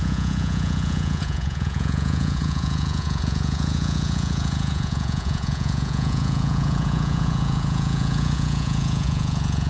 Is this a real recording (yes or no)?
no